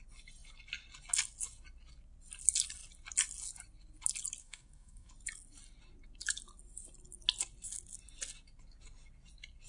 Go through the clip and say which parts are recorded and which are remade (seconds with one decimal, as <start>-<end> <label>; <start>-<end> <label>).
0.0-4.4 recorded; 4.4-5.1 remade; 5.1-9.7 recorded